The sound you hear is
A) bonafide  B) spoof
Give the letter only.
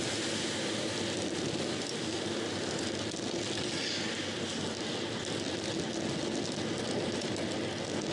A